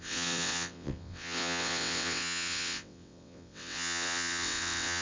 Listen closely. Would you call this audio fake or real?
fake